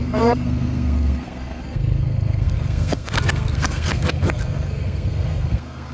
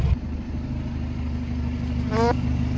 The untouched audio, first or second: second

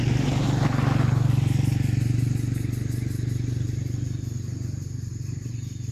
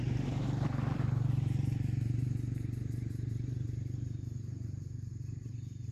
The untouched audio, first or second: first